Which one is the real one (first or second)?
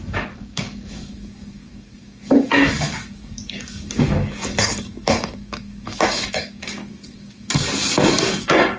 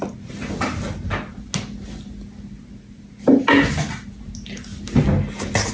second